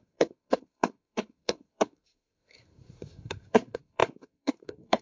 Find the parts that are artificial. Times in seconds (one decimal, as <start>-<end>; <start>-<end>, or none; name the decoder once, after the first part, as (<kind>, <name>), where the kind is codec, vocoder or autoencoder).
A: 0.0-5.0 (codec, SNAC)